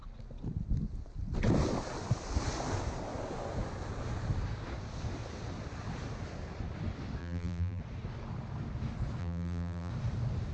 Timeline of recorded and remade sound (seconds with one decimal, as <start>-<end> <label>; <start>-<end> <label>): 0.0-7.2 recorded; 7.2-7.8 remade; 7.8-9.2 recorded; 9.2-9.9 remade; 9.9-10.5 recorded